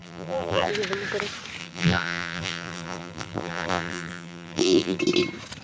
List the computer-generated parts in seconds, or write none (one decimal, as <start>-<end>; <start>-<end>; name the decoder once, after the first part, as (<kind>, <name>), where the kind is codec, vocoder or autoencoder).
0.0-0.7 (vocoder, BigVGAN v2); 1.6-5.0